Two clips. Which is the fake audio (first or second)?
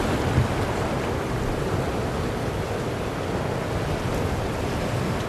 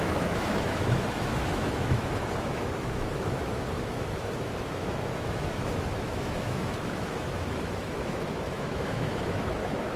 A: second